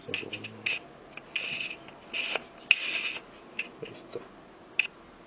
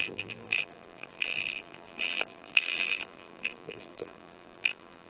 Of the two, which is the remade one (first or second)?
second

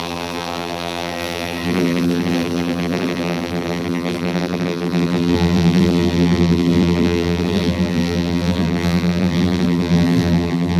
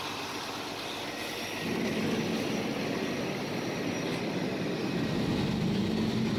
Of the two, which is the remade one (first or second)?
first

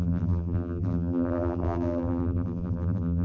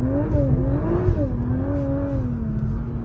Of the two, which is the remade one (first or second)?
first